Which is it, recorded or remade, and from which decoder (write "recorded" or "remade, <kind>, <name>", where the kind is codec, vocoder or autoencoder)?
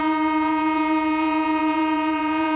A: remade, vocoder, Vocos